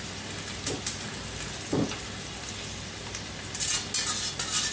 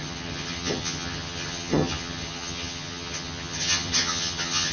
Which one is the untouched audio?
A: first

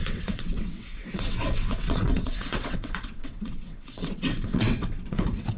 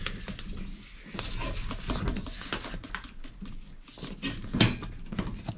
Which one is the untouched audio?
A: second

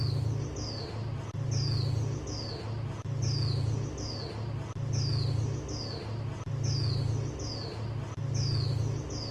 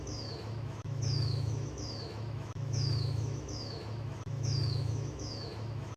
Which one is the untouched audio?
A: first